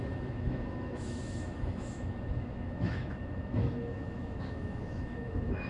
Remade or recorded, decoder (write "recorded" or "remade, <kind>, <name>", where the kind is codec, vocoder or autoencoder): remade, autoencoder, DAC-VAE